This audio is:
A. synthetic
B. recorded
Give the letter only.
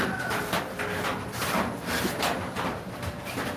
B